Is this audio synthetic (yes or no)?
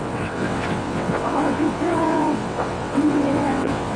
yes